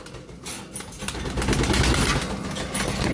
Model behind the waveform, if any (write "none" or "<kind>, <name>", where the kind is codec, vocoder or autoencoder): none